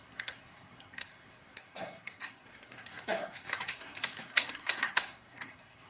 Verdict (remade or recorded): remade